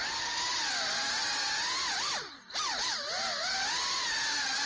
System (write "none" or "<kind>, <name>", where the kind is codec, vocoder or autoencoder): none